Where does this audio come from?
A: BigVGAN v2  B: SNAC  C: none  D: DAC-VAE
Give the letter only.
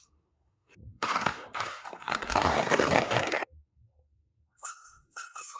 B